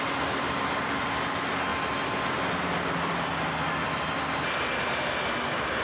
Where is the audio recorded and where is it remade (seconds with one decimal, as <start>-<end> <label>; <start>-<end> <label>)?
0.0-5.8 recorded